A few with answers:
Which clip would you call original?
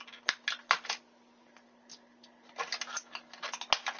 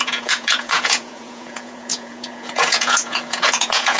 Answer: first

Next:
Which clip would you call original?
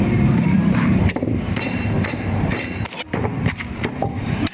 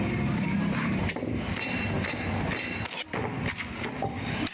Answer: second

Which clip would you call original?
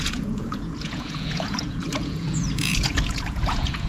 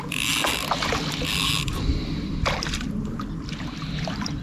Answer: second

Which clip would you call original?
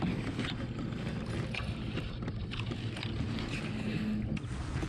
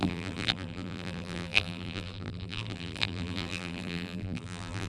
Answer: first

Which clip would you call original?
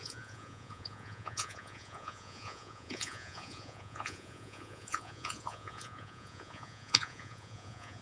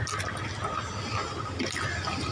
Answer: second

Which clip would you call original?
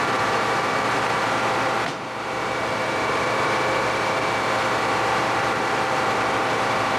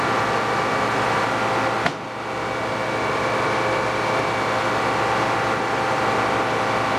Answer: second